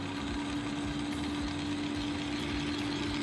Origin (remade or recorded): recorded